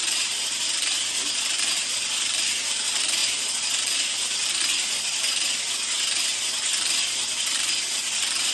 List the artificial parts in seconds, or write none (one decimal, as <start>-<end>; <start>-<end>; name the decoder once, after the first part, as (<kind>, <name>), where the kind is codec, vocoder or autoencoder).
0.0-0.6 (vocoder, BigVGAN v2); 3.2-4.6